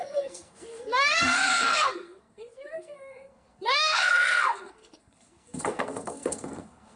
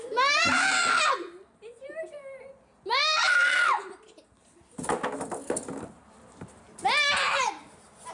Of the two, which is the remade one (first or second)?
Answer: first